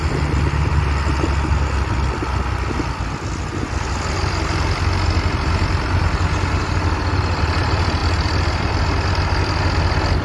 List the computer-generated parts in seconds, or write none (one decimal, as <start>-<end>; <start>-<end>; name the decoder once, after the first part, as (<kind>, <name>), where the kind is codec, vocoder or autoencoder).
8.0-9.6 (vocoder, BigVGAN v2)

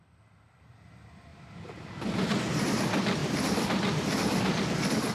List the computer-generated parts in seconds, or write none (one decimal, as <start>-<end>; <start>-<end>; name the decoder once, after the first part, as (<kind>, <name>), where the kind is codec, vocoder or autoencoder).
1.3-1.8 (vocoder, BigVGAN v2); 3.2-4.6

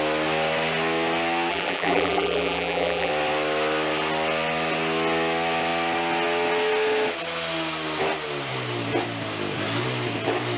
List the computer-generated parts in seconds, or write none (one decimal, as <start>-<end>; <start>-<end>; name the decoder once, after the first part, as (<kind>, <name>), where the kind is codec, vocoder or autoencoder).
1.5-3.1 (vocoder, BigVGAN v2)

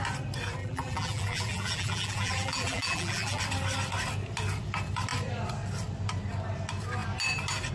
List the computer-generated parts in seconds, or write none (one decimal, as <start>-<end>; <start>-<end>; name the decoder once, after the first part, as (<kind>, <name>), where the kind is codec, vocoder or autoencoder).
0.6-3.4 (vocoder, BigVGAN v2)